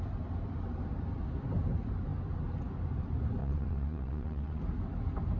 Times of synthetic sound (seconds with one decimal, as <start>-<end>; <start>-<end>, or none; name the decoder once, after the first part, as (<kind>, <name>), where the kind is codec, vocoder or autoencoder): 3.4-4.6 (vocoder, Vocos)